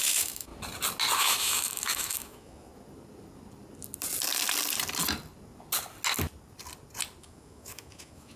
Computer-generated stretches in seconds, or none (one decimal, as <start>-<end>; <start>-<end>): 0.0-0.5; 1.2-2.7; 7.2-8.4